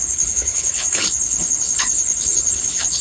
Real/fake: fake